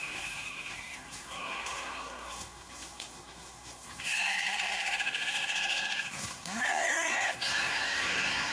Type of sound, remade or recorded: remade